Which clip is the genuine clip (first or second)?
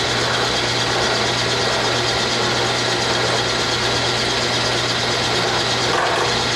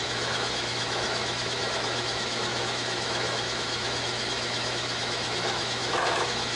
first